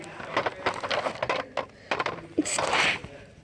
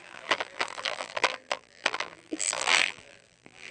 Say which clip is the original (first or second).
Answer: first